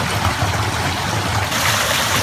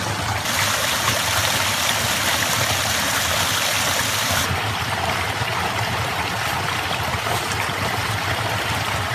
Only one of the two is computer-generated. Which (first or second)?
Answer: first